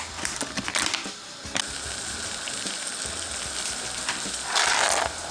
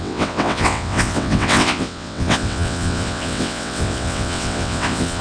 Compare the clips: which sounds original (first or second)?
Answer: first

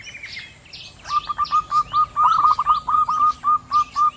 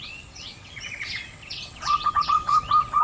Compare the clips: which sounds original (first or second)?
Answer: first